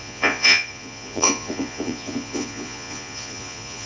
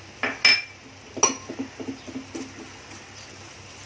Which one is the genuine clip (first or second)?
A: second